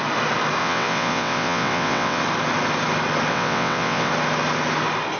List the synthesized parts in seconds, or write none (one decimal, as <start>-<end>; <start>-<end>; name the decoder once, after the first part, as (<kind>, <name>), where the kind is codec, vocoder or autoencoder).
0.6-2.2 (vocoder, WaveNeXt); 3.3-4.1